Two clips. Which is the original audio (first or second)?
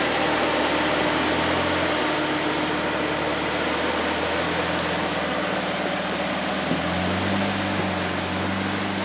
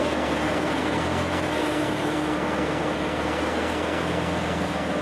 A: first